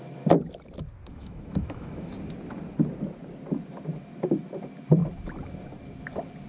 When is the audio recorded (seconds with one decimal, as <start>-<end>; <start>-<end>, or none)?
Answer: 0.0-1.1; 2.1-6.5